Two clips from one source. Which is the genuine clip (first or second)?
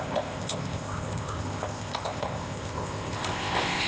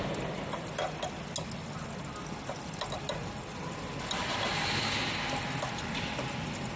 second